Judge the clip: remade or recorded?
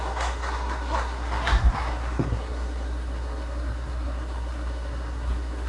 remade